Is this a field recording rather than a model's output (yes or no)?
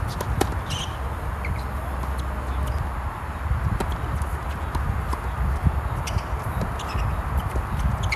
yes